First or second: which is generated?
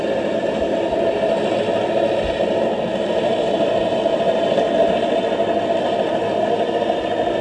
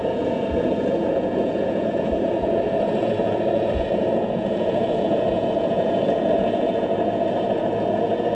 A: second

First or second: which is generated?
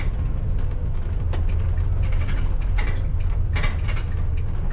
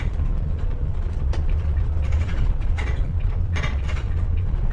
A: second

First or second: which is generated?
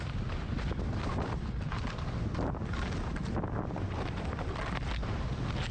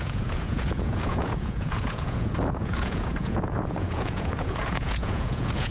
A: second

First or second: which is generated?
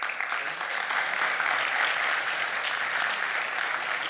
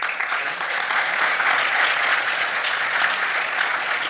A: second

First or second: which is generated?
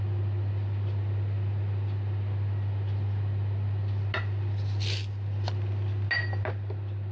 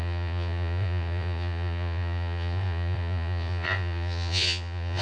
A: second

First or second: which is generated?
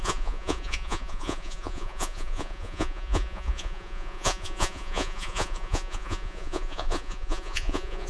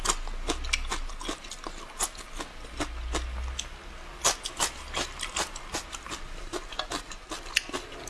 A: first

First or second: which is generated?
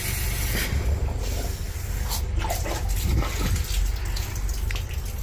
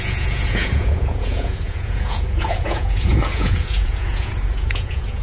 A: second